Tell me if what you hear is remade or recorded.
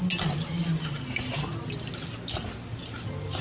recorded